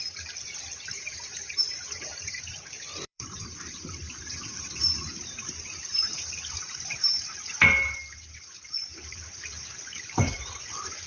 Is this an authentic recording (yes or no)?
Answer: no